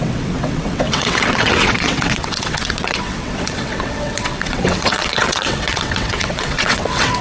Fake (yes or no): yes